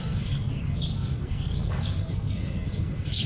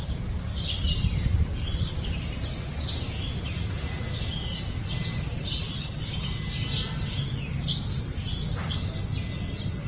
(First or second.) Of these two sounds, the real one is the second